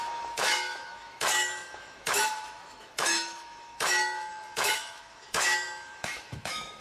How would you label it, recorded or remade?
remade